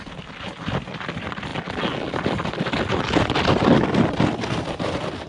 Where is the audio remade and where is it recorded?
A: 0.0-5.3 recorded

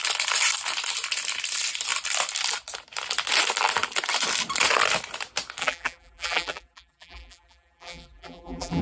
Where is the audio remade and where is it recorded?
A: 0.0-5.6 recorded; 5.6-8.8 remade

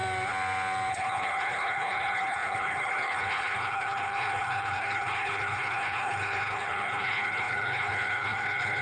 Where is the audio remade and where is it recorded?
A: 0.0-0.9 recorded; 0.9-8.8 remade